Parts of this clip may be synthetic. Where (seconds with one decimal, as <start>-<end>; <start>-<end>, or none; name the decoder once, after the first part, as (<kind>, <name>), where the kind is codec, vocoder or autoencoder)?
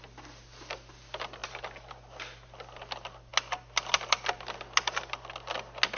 none